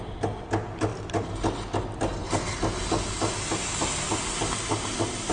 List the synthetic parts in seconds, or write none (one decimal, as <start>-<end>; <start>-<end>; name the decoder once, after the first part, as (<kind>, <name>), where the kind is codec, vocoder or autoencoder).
none